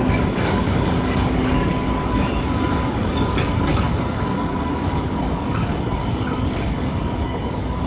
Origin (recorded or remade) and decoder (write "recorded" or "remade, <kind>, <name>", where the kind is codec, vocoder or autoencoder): remade, codec, DAC